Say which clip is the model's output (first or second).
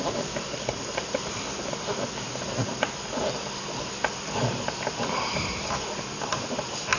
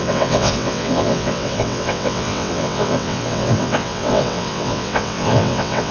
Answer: second